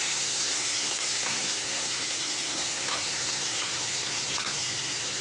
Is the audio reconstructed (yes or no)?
yes